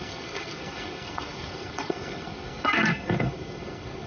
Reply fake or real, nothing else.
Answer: fake